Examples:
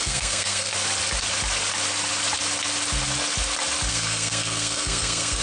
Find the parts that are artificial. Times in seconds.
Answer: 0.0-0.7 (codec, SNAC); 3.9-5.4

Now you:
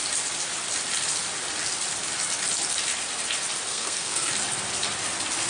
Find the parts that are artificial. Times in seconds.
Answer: 3.7-4.3 (codec, SNAC)

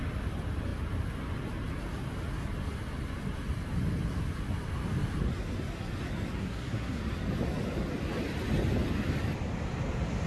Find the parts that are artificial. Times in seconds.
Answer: 6.4-7.0 (codec, SNAC)

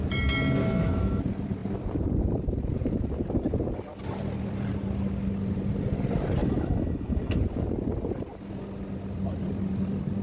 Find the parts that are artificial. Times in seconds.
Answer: 0.6-1.2 (autoencoder, DAC-VAE); 6.4-7.4

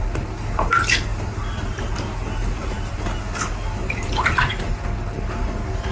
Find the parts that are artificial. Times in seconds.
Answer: none

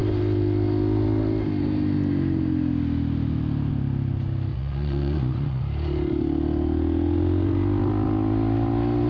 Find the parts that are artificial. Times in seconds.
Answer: 4.5-5.6 (vocoder, Vocos)